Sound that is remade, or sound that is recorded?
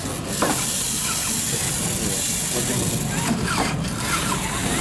recorded